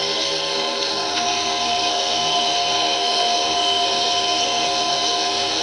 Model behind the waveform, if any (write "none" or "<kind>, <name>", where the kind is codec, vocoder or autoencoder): codec, SNAC